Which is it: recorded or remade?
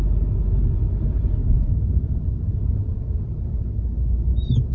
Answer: recorded